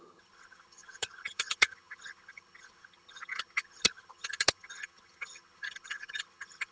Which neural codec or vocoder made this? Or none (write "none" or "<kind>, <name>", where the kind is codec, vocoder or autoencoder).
vocoder, HiFi-GAN